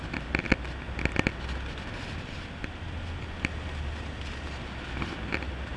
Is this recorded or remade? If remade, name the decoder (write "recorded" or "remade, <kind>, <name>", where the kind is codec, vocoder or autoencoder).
recorded